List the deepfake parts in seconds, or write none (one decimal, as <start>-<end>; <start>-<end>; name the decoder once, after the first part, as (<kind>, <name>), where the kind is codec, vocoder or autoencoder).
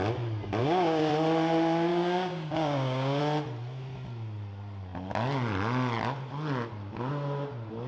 0.6-1.1 (codec, DAC); 1.9-3.2